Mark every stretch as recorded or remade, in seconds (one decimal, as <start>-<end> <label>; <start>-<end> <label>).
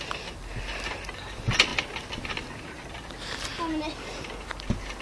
0.0-5.0 recorded